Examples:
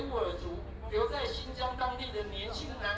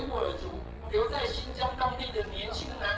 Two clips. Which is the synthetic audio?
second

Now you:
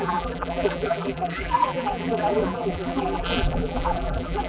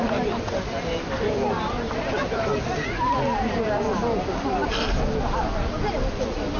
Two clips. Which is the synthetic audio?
first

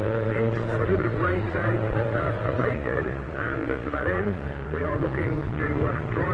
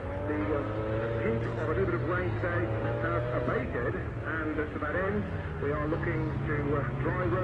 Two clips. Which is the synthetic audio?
first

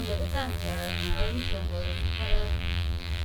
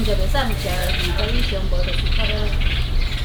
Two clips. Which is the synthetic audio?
first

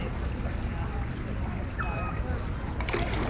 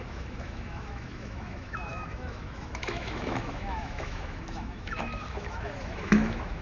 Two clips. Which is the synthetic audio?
second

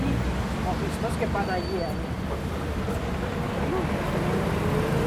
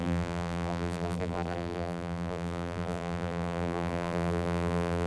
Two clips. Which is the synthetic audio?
second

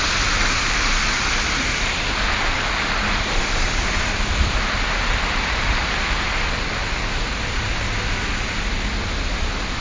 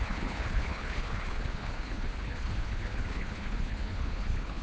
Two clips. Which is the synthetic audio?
second